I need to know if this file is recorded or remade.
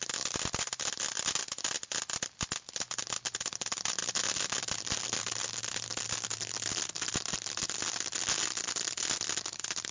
recorded